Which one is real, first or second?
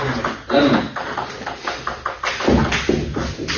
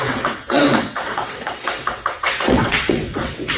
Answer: first